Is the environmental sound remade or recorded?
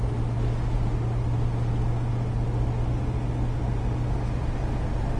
recorded